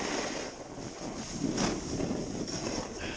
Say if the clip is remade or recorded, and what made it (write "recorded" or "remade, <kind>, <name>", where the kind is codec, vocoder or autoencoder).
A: recorded